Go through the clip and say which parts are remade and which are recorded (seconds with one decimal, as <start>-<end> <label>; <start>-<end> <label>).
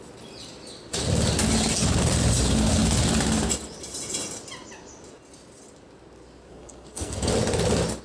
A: 0.0-6.5 recorded; 6.5-7.3 remade; 7.3-8.0 recorded